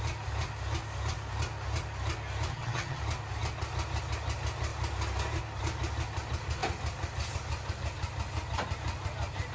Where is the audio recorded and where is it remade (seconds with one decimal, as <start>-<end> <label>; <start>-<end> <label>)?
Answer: 0.0-2.5 recorded; 2.5-3.0 remade; 3.0-9.5 recorded